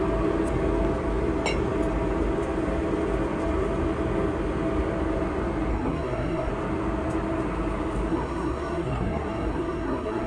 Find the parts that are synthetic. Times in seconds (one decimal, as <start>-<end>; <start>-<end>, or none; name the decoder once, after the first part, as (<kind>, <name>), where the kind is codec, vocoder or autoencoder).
5.7-6.5 (codec, SNAC); 8.1-10.3